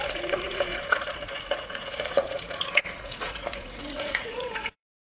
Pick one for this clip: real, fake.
fake